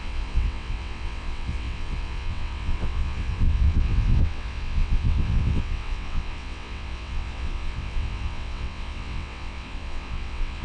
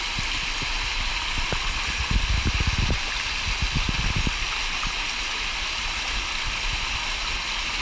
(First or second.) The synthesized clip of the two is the first